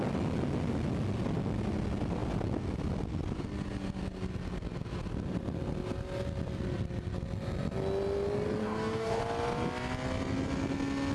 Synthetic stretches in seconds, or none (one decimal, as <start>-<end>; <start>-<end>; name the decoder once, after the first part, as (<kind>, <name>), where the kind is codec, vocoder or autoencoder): 8.6-9.2 (codec, DAC)